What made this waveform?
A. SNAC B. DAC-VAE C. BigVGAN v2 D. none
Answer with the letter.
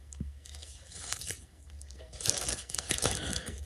A